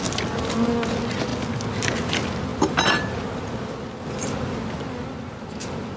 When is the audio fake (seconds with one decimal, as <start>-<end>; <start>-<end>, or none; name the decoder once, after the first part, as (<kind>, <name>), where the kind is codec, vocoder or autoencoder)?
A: 1.3-2.1 (vocoder, BigVGAN v2); 2.5-3.7